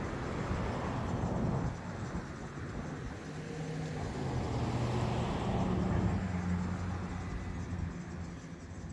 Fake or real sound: real